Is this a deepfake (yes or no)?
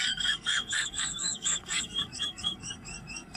yes